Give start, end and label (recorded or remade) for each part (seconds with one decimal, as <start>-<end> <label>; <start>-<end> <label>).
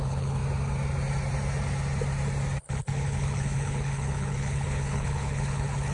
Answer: 0.0-0.4 remade; 0.4-2.6 recorded; 2.6-5.9 remade